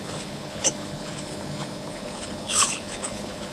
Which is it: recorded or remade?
remade